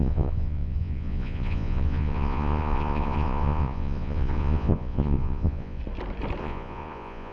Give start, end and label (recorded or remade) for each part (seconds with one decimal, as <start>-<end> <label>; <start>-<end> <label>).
0.0-5.8 remade; 5.8-6.4 recorded; 6.4-7.3 remade